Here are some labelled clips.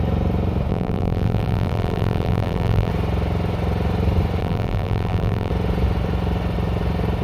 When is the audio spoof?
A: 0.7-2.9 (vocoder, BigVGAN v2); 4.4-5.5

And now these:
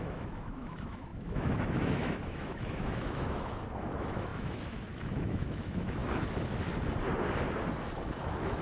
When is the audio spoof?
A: 0.0-6.0 (autoencoder, DAC-VAE); 8.2-8.6

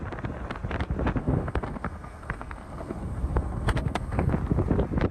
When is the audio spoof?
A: 1.2-4.3 (codec, SNAC)

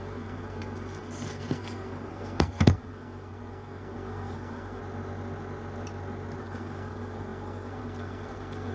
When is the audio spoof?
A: 0.0-4.8 (codec, SNAC); 6.4-8.7

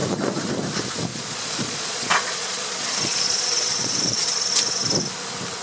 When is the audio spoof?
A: 0.0-0.5 (vocoder, Vocos); 1.1-4.5

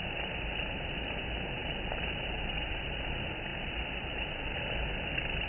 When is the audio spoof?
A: none

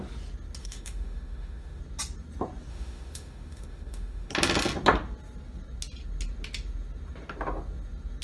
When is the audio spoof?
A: 0.6-1.8 (autoencoder, DAC-VAE); 2.7-4.3

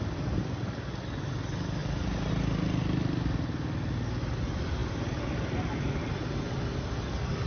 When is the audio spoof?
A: 1.8-2.3 (vocoder, BigVGAN v2)